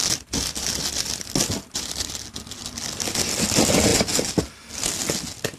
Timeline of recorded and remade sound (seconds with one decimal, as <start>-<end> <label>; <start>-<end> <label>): 0.0-5.6 recorded